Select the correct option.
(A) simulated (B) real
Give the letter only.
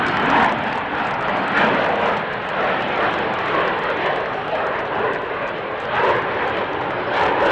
B